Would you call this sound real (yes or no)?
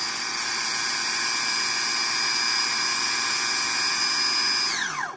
yes